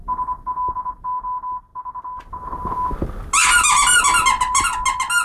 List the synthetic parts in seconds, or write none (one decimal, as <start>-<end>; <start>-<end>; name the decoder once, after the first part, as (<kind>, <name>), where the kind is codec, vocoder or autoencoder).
none